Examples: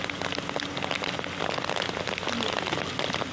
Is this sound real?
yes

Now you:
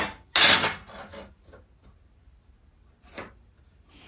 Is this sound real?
yes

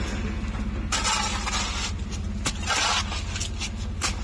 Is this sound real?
yes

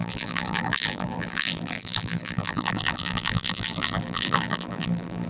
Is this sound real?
no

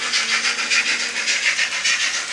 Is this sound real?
yes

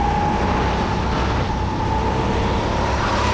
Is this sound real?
yes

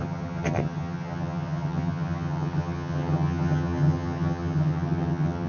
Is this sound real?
no